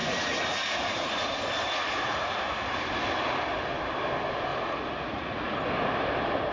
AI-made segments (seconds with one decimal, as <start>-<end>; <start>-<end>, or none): 0.0-1.4; 1.8-2.4; 4.5-5.6